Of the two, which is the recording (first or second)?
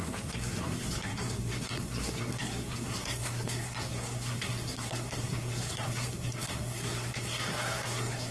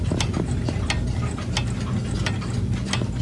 second